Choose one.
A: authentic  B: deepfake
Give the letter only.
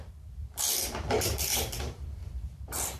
B